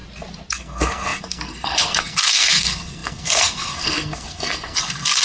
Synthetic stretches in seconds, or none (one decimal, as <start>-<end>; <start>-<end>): 0.5-5.2